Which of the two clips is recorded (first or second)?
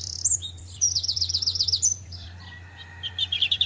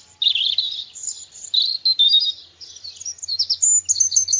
second